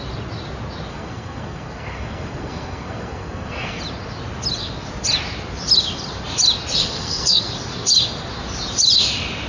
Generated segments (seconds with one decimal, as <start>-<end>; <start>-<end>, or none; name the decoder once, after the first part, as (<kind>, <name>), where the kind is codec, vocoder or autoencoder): 0.9-3.8 (codec, SNAC); 6.8-7.5